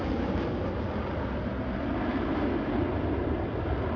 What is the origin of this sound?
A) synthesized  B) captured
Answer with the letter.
B